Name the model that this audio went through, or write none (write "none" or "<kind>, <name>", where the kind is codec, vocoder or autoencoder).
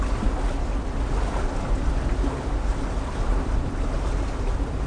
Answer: none